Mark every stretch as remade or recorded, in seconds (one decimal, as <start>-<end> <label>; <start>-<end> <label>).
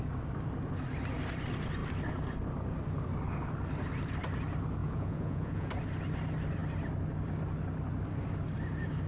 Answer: 0.0-4.8 recorded; 4.8-5.7 remade; 5.7-9.1 recorded